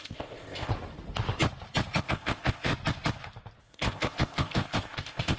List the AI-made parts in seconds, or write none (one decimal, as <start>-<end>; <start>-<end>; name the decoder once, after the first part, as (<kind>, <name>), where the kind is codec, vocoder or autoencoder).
0.0-0.7 (codec, ZipCodec); 2.0-2.7; 3.6-5.4